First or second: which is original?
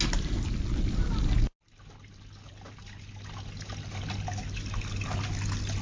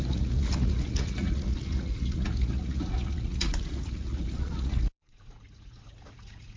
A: first